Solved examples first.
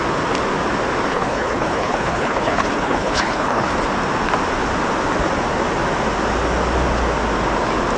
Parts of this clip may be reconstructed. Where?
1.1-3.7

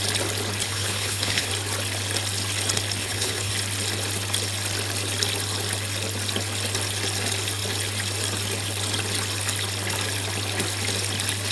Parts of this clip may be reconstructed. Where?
0.6-1.5; 3.0-3.5

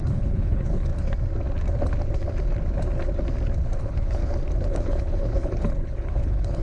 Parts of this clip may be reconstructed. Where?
0.0-0.9; 3.8-4.2; 4.7-6.6

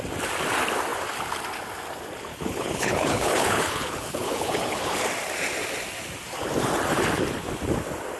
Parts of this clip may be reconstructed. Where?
2.3-5.0

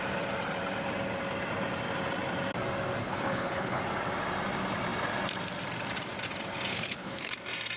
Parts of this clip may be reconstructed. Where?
3.0-3.8; 6.7-7.3